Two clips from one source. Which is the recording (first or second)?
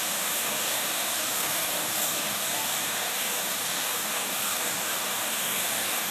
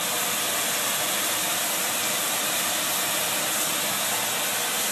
second